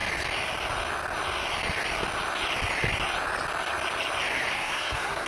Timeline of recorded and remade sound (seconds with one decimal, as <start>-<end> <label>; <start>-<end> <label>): 0.0-4.5 recorded; 4.5-5.3 remade